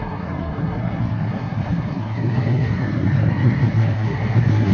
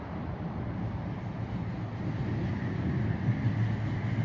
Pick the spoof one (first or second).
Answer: first